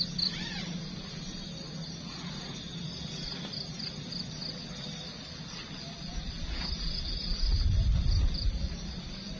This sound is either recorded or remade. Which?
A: recorded